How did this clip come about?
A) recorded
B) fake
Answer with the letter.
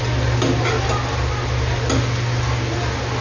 A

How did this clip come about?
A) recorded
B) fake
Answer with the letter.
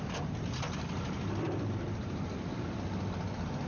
A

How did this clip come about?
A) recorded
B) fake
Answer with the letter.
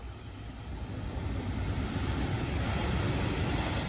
A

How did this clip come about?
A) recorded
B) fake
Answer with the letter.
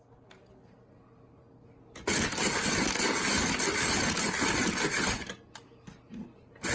A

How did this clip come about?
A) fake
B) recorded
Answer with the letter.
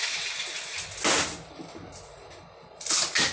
B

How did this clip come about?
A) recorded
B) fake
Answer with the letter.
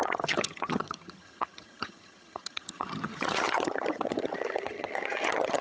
B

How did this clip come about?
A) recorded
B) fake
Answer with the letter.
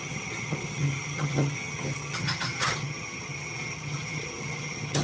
B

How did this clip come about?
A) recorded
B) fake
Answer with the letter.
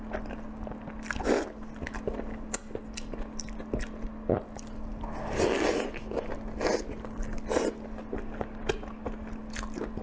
A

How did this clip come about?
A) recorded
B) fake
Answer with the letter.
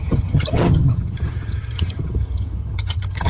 B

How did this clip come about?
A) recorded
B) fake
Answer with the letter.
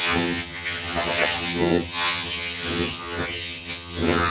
B